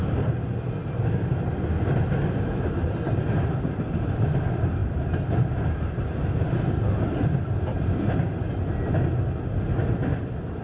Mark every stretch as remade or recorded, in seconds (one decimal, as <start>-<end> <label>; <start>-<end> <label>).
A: 0.0-10.6 recorded